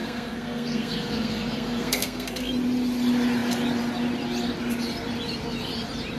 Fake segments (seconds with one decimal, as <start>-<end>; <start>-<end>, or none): 0.0-2.5